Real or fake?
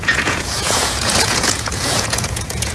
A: fake